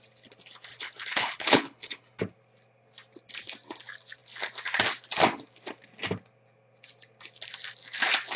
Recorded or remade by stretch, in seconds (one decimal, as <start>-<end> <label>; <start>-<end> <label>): 0.0-0.7 recorded; 0.7-2.2 remade; 2.2-8.4 recorded